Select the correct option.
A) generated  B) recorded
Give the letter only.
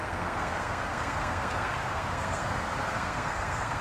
A